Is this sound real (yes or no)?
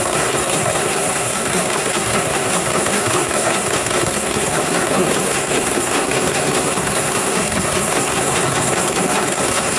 no